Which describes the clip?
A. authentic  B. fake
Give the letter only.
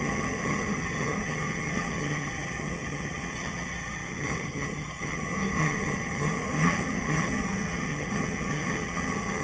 B